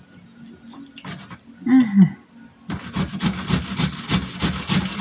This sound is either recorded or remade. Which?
recorded